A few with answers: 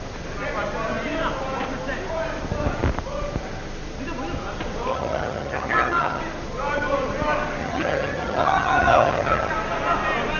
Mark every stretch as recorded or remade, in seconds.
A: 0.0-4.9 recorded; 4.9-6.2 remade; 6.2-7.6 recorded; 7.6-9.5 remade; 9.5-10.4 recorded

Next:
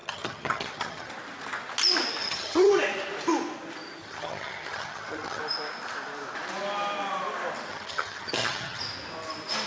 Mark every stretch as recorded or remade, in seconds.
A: 0.0-1.1 remade; 1.1-2.2 recorded; 2.2-2.7 remade; 2.7-4.0 recorded; 4.0-5.4 remade; 5.4-7.7 recorded; 7.7-8.8 remade; 8.8-9.7 recorded

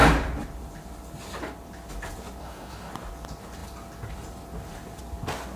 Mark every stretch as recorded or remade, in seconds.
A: 0.0-2.4 recorded; 2.4-2.9 remade; 2.9-5.6 recorded

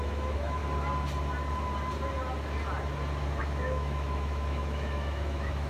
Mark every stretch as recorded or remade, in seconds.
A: 0.0-0.6 remade; 0.6-3.4 recorded; 3.4-5.7 remade

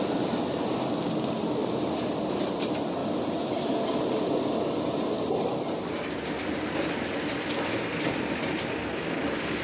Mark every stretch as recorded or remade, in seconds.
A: 0.0-9.6 recorded

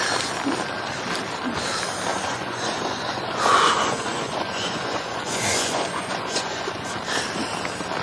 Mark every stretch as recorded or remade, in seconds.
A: 0.0-2.1 recorded; 2.1-6.9 remade; 6.9-8.0 recorded

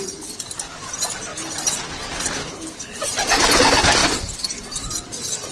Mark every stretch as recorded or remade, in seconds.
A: 0.0-2.4 recorded; 2.4-3.0 remade; 3.0-5.5 recorded